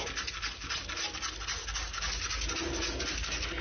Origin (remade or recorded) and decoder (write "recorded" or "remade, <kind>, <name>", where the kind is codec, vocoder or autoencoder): recorded